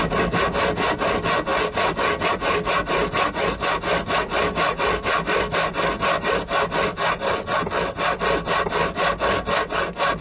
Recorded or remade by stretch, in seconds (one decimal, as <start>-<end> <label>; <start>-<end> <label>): 0.0-10.2 recorded